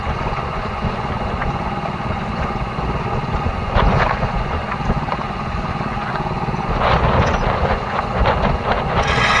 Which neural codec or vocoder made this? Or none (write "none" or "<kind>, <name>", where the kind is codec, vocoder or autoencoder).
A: vocoder, Vocos